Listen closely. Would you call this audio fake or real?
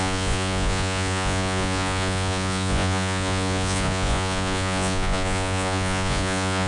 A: fake